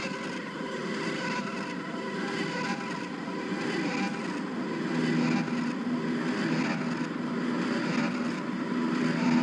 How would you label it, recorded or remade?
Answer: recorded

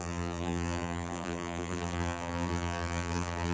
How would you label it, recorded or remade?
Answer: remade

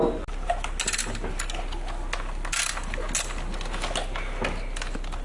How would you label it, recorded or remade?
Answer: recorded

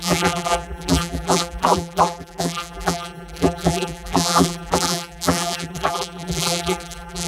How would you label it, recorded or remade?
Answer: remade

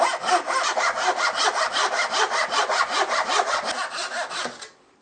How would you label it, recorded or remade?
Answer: recorded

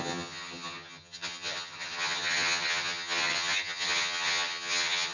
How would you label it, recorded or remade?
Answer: remade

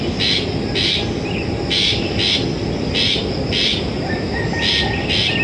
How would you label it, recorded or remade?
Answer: recorded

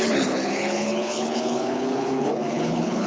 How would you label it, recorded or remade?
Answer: remade